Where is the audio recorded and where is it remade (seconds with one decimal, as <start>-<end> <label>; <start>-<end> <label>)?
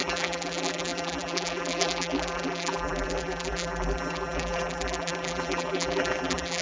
0.0-6.6 remade